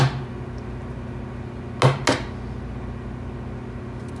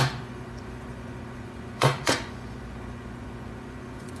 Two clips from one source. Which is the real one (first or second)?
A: first